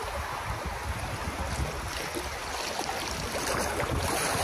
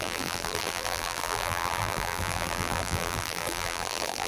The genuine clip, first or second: first